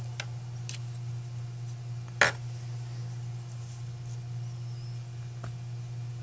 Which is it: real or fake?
real